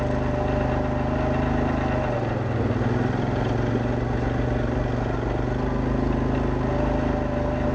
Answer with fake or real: real